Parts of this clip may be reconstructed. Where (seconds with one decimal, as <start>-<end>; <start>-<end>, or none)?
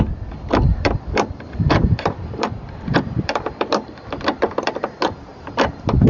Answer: 0.7-4.4; 5.3-6.1